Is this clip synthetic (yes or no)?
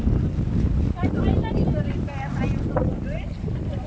no